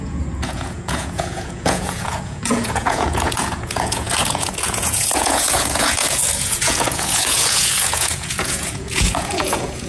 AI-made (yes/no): yes